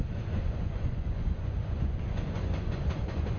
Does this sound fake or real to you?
fake